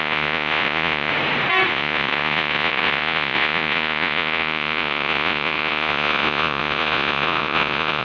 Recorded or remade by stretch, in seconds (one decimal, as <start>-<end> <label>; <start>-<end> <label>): 0.0-1.1 remade; 1.1-1.7 recorded; 1.7-8.0 remade